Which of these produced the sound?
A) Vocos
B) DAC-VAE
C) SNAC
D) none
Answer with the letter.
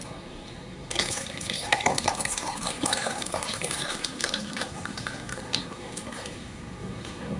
C